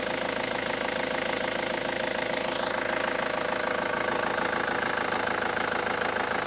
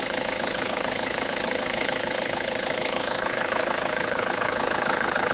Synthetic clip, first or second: second